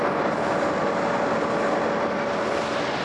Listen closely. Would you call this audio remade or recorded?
recorded